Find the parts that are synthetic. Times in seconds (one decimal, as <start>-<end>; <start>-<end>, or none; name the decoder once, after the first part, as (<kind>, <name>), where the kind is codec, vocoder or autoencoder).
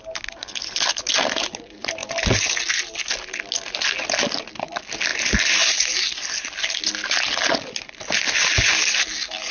none